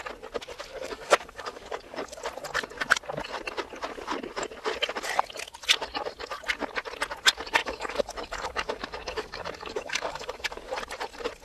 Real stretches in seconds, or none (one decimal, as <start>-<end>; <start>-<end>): 0.0-0.7; 2.2-7.6; 10.7-11.4